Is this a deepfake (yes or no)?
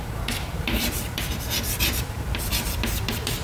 yes